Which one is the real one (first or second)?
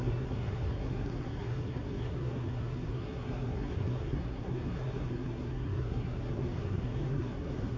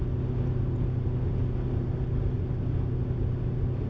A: second